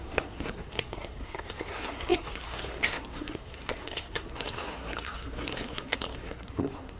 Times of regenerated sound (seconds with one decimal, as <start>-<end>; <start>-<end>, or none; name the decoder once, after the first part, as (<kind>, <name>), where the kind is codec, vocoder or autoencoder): 0.0-7.0 (codec, SNAC)